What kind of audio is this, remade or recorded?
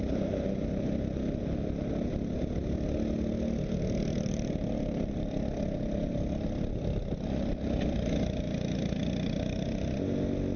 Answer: recorded